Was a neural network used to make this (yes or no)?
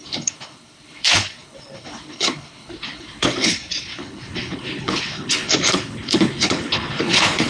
yes